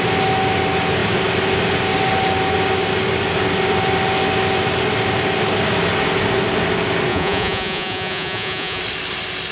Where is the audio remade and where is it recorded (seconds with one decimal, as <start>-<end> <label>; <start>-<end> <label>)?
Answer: 0.0-7.1 recorded; 7.1-8.8 remade; 8.8-9.5 recorded